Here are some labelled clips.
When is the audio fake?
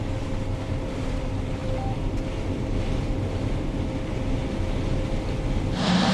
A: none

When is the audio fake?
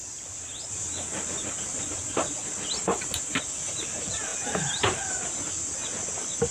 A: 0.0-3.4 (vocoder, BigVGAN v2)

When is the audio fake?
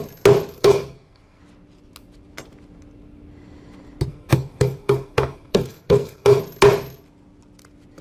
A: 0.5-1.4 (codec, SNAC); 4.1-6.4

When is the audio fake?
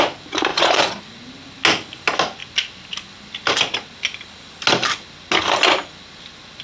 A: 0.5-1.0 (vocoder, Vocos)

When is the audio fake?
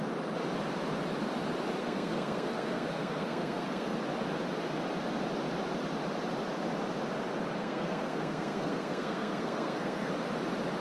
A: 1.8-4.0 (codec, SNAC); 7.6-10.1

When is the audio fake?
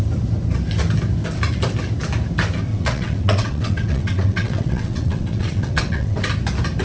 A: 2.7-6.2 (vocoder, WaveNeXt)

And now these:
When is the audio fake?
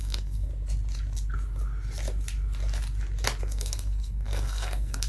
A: 0.0-0.5 (codec, SNAC); 3.4-5.1